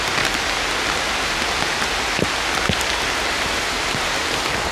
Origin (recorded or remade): recorded